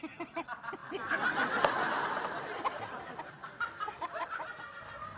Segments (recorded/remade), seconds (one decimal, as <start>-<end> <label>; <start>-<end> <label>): 0.0-5.2 recorded